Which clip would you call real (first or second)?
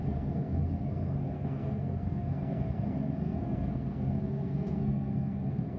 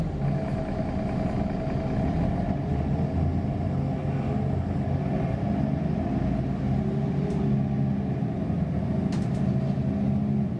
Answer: second